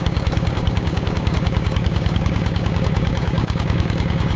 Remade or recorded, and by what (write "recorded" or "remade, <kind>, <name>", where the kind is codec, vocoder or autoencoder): remade, codec, DAC